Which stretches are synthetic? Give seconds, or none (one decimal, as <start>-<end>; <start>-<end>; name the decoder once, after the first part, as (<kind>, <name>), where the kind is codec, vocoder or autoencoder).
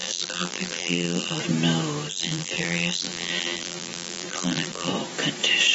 0.0-1.4 (vocoder, BigVGAN v2); 2.1-4.9